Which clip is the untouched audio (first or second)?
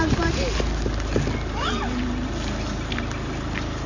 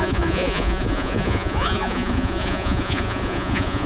first